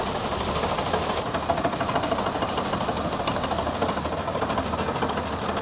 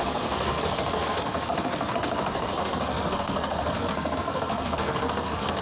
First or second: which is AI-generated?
second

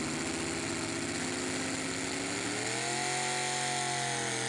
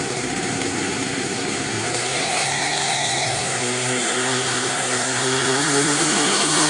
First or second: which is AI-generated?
second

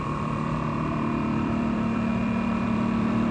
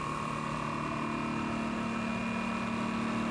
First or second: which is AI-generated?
first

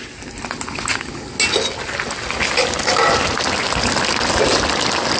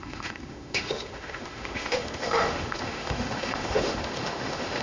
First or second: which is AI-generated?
second